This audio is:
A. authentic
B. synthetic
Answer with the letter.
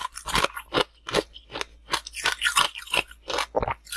A